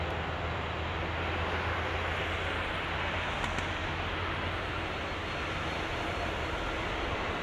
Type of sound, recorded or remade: recorded